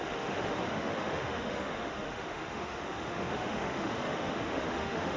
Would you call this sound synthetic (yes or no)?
yes